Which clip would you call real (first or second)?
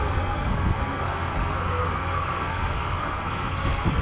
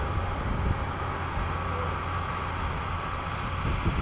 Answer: second